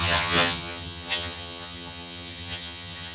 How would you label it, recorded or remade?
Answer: remade